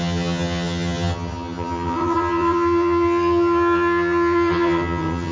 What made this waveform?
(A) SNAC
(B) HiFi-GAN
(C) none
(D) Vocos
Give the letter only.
B